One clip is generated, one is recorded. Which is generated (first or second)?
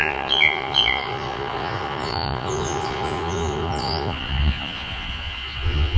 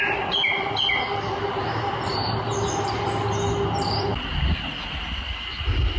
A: first